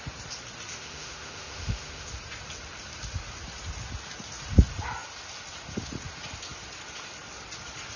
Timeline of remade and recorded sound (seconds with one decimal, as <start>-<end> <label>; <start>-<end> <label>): 0.0-0.7 recorded; 0.7-2.1 remade; 2.1-8.0 recorded